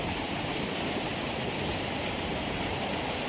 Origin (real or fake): fake